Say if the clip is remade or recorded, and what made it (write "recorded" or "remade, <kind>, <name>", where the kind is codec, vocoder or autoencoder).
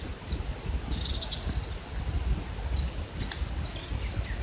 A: recorded